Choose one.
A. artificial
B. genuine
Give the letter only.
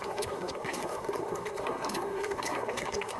A